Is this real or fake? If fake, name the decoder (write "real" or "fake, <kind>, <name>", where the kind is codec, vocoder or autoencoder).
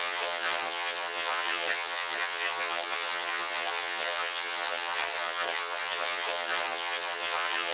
fake, vocoder, HiFi-GAN